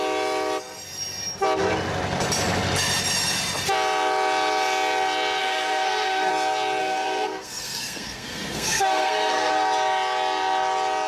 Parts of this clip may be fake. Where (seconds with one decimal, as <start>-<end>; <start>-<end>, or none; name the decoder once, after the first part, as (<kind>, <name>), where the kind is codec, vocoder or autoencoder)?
5.4-6.3 (codec, SNAC); 6.8-9.5